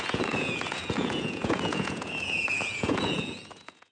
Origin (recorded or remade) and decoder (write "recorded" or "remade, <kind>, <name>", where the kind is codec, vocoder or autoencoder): remade, vocoder, Vocos